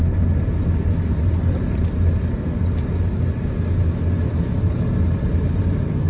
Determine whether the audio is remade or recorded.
recorded